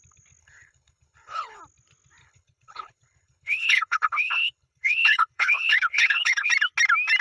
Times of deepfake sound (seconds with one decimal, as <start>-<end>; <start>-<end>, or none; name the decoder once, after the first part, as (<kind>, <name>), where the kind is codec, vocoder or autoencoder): 0.4-1.6 (codec, HILCodec); 2.2-6.5